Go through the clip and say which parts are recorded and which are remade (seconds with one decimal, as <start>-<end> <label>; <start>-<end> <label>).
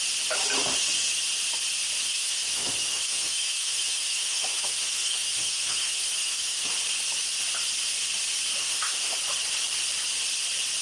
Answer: 0.0-2.1 recorded; 2.1-6.7 remade; 6.7-8.6 recorded; 8.6-9.2 remade; 9.2-10.8 recorded